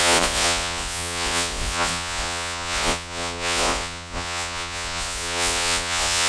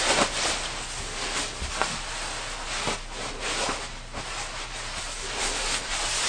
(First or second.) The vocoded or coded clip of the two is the first